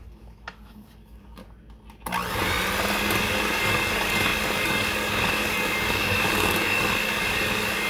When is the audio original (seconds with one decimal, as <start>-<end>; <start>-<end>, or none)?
1.4-3.2